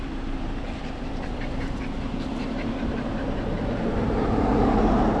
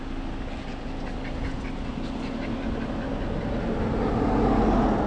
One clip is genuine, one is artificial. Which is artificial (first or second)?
first